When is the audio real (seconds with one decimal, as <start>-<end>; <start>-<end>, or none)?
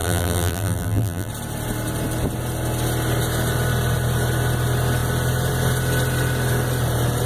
1.3-7.3